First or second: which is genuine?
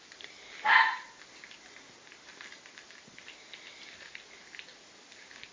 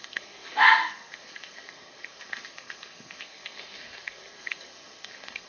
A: first